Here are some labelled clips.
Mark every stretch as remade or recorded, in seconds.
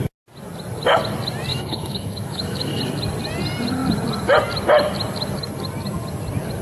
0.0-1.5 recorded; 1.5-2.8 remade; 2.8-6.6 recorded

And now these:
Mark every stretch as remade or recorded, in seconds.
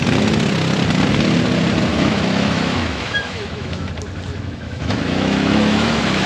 0.0-1.9 recorded; 1.9-3.9 remade; 3.9-4.3 recorded; 4.3-6.3 remade